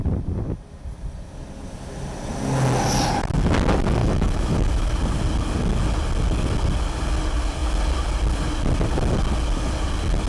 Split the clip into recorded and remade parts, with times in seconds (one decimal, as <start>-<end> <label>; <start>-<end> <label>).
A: 0.0-4.0 recorded; 4.0-5.0 remade; 5.0-10.3 recorded